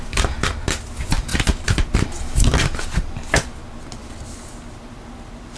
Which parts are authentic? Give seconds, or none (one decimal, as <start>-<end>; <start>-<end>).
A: 0.0-5.6